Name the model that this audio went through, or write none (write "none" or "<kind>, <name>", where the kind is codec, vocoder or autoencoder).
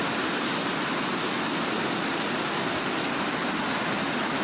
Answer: none